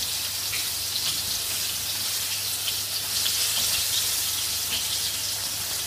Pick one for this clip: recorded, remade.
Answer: recorded